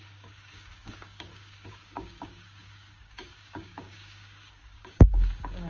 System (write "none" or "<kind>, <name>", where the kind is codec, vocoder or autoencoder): codec, DAC